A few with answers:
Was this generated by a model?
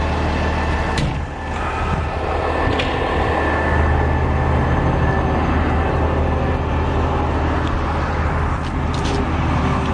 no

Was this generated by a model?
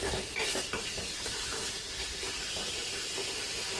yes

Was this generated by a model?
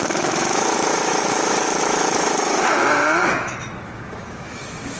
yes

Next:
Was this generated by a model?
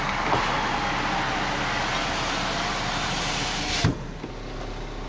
no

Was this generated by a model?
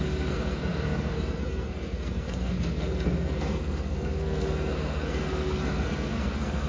yes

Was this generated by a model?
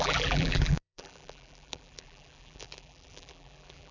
yes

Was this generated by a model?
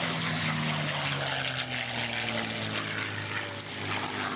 no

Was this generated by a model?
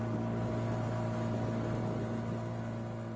no